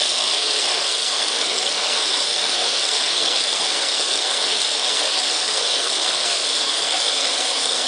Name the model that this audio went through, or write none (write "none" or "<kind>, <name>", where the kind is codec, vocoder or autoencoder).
codec, SNAC